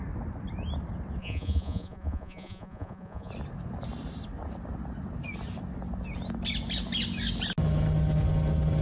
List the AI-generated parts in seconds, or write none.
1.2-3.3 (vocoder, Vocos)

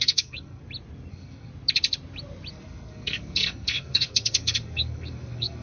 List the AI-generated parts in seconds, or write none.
0.0-0.6 (codec, SNAC); 1.1-1.5; 2.5-5.6

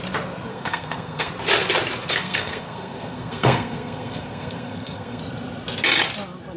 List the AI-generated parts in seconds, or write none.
0.5-1.3 (codec, SNAC); 2.1-5.2

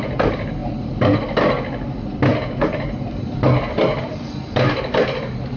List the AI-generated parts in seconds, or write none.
none

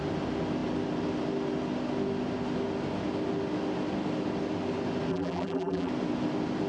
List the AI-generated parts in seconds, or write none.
5.1-5.9 (vocoder, BigVGAN v2)

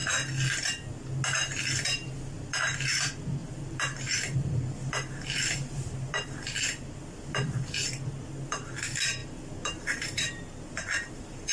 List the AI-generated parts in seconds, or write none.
1.6-11.5 (vocoder, BigVGAN v2)